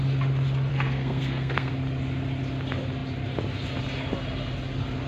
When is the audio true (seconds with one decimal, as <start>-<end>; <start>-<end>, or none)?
0.0-0.7; 1.7-5.1